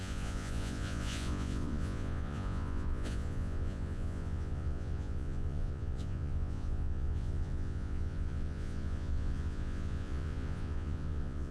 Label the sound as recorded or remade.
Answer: remade